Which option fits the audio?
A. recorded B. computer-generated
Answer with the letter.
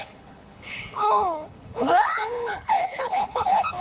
B